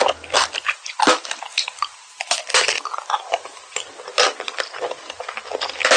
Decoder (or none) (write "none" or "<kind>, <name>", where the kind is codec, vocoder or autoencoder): none